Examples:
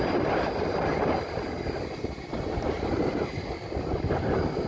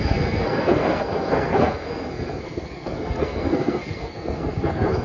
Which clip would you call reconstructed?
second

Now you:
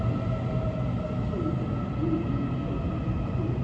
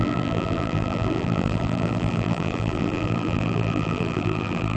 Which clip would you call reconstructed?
second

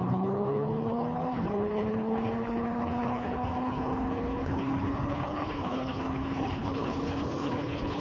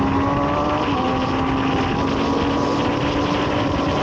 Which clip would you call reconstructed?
first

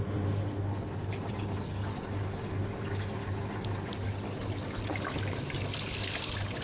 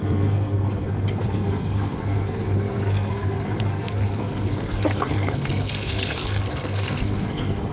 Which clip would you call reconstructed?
second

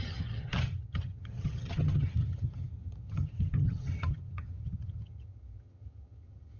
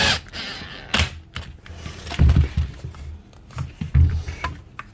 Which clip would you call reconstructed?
first